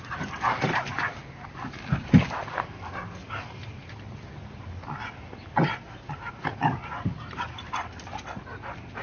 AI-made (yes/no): no